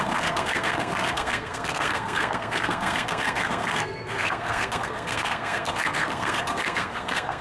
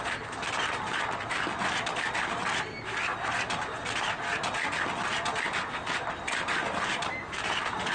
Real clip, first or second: second